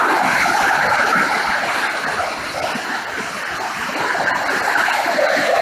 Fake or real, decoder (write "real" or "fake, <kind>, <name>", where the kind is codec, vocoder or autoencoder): real